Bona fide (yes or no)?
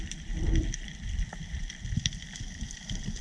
no